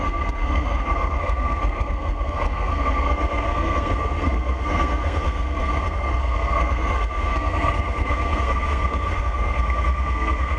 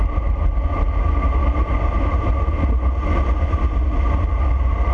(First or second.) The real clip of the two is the second